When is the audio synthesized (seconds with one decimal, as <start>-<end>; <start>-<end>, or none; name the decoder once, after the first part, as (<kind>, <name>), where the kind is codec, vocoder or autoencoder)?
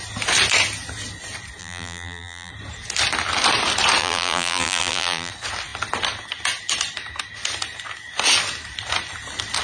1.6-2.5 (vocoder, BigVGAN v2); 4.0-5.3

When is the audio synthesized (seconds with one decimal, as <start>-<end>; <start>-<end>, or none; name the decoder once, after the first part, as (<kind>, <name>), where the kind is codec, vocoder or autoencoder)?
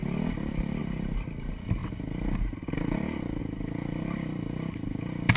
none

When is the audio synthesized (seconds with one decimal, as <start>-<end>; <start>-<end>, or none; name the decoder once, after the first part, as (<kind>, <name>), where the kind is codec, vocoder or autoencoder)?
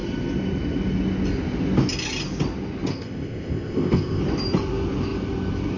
2.9-4.2 (codec, ZipCodec)